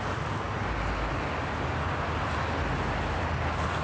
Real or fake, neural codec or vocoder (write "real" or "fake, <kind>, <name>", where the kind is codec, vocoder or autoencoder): real